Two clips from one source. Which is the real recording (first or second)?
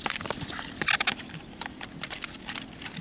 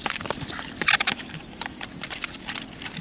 first